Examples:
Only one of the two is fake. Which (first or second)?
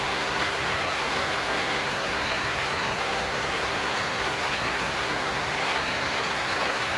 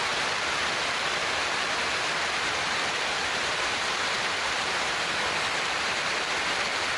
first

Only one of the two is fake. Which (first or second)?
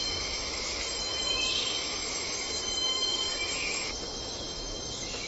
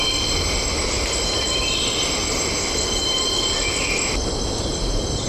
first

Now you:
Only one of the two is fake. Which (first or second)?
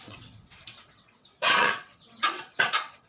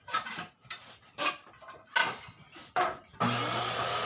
first